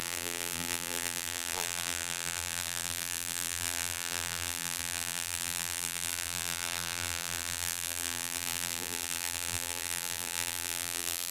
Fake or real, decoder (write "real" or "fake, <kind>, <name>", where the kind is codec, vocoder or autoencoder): fake, vocoder, BigVGAN v2